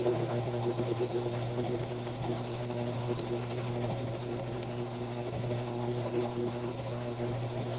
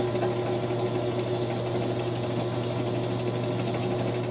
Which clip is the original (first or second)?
second